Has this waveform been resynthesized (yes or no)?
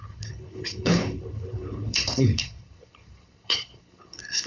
yes